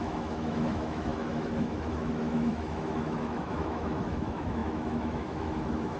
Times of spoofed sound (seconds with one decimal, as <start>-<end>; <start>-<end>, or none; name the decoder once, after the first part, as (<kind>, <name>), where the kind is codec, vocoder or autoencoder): 0.0-6.0 (autoencoder, DAC-VAE)